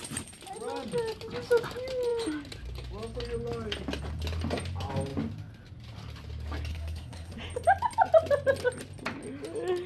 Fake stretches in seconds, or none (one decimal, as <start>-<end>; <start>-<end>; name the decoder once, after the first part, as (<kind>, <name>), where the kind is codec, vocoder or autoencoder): 6.7-7.3 (codec, SNAC)